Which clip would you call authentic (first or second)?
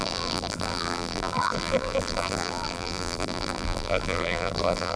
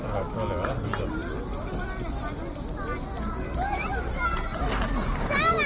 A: second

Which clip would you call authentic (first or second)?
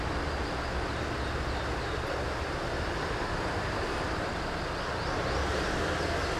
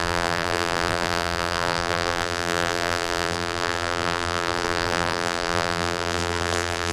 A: first